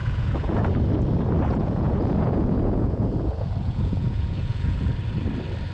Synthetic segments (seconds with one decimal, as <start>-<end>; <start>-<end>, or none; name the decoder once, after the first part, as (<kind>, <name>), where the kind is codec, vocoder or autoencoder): 0.0-0.7 (vocoder, Vocos); 1.5-4.9